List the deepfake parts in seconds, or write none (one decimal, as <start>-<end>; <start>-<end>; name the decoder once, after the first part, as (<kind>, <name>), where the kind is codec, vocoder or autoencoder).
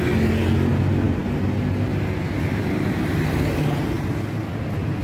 none